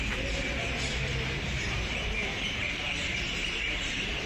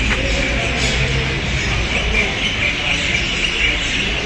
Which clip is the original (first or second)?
second